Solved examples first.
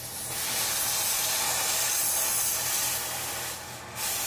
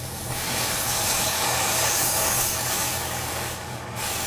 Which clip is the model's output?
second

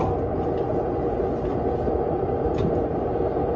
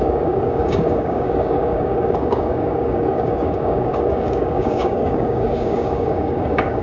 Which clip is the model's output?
second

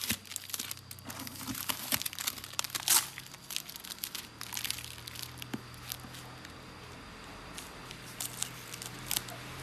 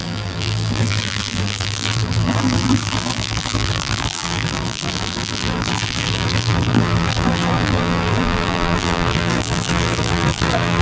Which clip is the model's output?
second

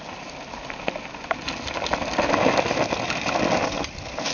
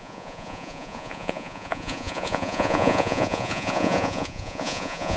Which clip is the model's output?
second